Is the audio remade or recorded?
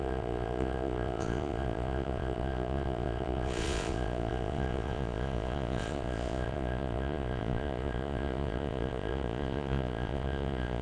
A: remade